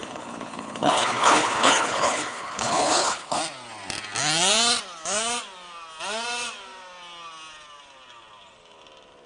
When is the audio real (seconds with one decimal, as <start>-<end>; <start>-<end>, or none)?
3.4-9.3

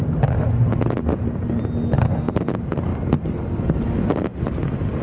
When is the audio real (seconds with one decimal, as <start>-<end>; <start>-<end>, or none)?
0.0-5.0

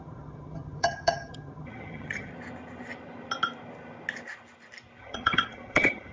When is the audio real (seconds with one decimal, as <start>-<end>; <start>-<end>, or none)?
2.3-5.0

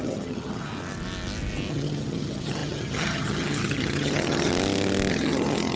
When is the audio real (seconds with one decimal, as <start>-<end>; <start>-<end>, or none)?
0.7-1.7; 4.5-5.1

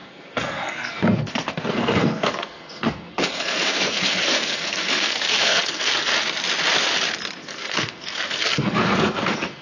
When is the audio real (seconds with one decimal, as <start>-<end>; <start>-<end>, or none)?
6.1-7.4